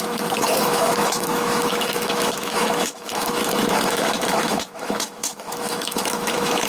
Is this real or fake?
fake